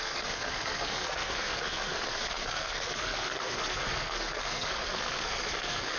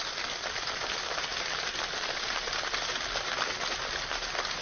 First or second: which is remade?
first